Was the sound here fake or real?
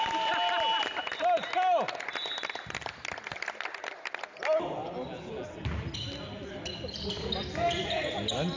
real